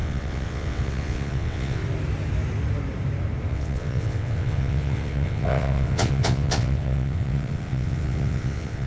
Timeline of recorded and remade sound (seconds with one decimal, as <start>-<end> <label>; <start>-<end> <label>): 0.0-1.8 remade; 1.8-3.5 recorded; 3.5-8.9 remade